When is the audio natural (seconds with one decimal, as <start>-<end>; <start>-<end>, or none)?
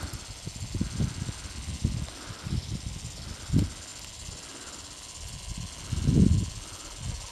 0.0-7.3